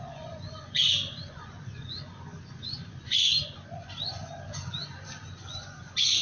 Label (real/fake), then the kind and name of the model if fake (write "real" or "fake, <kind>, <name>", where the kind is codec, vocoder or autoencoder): fake, vocoder, Vocos